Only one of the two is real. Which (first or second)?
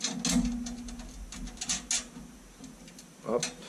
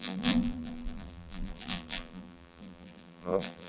first